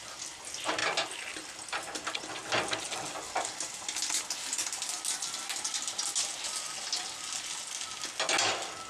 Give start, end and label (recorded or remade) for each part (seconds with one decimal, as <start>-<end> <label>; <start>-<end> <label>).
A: 0.0-8.9 recorded